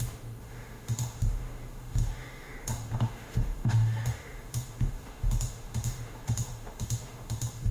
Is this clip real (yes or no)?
no